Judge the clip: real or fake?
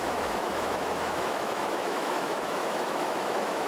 fake